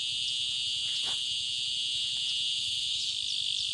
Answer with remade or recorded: recorded